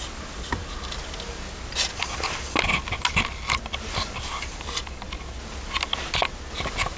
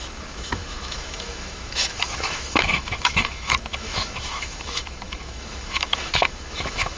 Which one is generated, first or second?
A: second